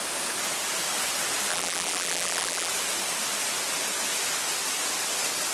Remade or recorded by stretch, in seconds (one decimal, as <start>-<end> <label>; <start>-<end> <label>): 0.0-1.5 recorded; 1.5-2.7 remade; 2.7-5.5 recorded